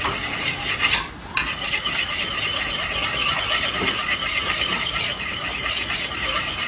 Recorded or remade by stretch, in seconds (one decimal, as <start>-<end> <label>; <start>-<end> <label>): 0.0-6.7 recorded